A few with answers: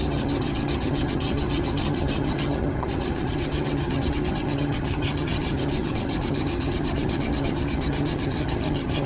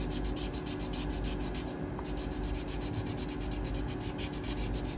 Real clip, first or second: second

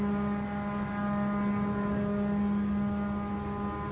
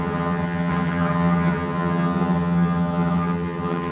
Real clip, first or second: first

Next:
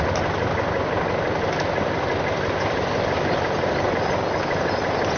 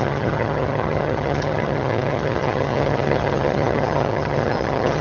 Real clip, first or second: first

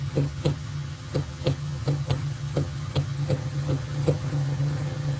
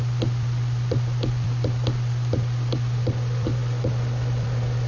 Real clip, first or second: second